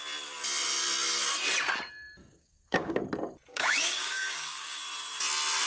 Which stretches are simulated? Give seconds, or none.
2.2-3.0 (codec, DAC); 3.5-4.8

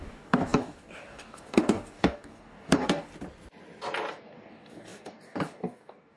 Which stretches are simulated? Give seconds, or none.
0.0-3.1 (codec, DAC); 4.1-6.2

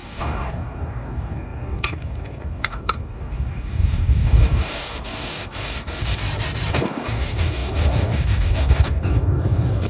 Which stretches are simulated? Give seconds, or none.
0.0-6.2 (codec, DAC); 6.7-9.9